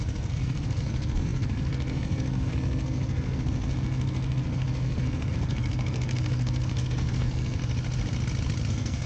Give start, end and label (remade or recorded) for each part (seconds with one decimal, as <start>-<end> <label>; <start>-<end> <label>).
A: 0.0-7.6 remade; 7.6-8.7 recorded; 8.7-9.1 remade